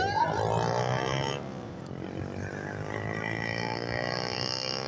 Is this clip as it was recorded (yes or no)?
yes